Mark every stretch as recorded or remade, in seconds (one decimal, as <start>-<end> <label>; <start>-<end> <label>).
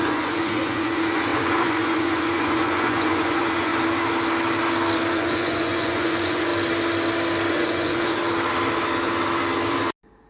0.0-3.7 remade; 3.7-5.1 recorded; 5.1-6.5 remade; 6.5-7.5 recorded; 7.5-8.2 remade; 8.2-10.3 recorded